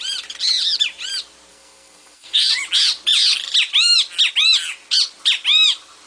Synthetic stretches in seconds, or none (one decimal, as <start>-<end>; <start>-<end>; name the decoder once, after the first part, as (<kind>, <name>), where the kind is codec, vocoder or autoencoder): 1.5-2.5 (codec, SNAC)